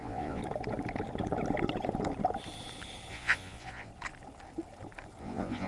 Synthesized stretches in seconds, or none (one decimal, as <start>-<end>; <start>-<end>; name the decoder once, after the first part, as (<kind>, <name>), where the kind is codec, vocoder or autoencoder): 0.0-0.4 (vocoder, Vocos); 3.1-3.9; 5.2-5.7